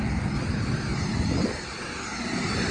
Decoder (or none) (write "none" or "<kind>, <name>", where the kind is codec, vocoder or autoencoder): none